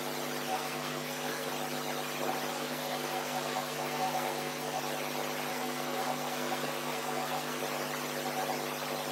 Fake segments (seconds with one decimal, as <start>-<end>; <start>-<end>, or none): 0.5-1.5; 2.5-4.8; 5.5-7.6